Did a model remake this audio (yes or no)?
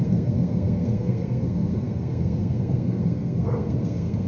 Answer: yes